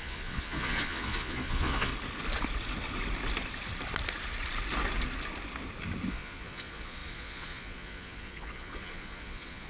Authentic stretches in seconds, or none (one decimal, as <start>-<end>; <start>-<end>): 1.9-6.1